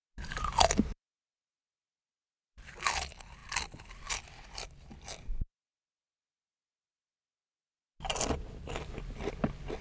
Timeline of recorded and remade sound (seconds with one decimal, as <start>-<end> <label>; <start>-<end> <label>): 0.0-9.8 recorded

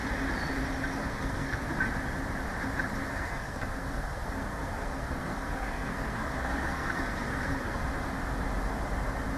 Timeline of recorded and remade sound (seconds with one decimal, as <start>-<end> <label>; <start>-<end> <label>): 0.0-1.0 recorded; 1.0-1.7 remade; 1.7-3.0 recorded; 3.0-7.8 remade; 7.8-9.4 recorded

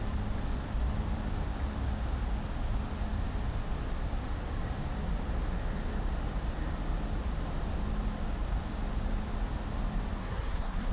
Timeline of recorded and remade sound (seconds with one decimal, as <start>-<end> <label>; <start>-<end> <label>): 0.0-10.2 recorded; 10.2-10.9 remade

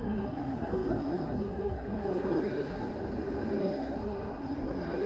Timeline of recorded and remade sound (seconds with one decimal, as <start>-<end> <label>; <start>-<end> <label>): 0.0-2.9 remade; 2.9-3.6 recorded; 3.6-5.1 remade